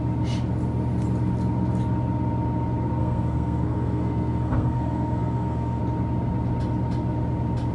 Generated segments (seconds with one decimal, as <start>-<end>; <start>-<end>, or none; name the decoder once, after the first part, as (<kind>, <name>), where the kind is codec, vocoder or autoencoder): 3.0-5.8 (codec, SNAC)